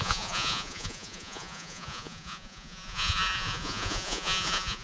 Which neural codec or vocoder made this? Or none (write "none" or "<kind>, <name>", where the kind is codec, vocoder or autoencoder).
vocoder, Vocos